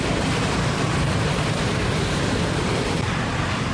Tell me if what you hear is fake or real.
fake